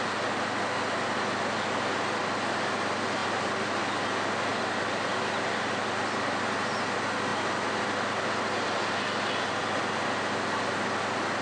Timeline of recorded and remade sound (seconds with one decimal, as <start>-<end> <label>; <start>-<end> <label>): 0.0-3.2 recorded; 3.2-3.8 remade; 3.8-4.5 recorded; 4.5-6.4 remade; 6.4-7.3 recorded; 7.3-9.8 remade; 9.8-11.4 recorded